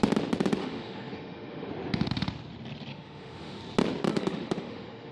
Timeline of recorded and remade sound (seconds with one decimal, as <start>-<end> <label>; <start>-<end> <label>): 0.0-0.6 recorded; 0.6-1.7 remade; 1.7-2.9 recorded; 2.9-3.6 remade; 3.6-4.1 recorded; 4.1-5.1 remade